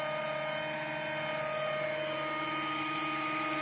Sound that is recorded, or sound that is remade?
recorded